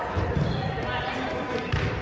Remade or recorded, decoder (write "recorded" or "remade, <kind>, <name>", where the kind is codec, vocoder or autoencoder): recorded